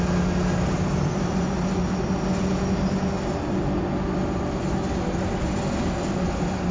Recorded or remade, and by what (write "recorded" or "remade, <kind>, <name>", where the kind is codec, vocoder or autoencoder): recorded